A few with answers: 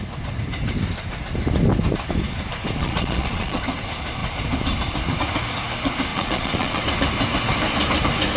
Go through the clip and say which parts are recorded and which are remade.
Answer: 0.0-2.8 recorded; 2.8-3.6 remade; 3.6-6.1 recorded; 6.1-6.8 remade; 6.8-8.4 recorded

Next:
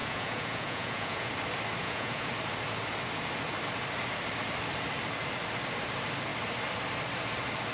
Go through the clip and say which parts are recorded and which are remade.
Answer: 0.0-1.3 remade; 1.3-1.8 recorded; 1.8-2.3 remade; 2.3-7.7 recorded